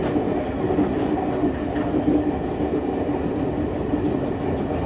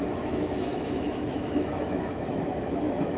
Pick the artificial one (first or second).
second